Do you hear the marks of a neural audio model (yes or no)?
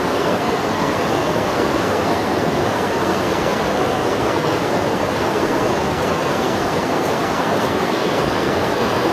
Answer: yes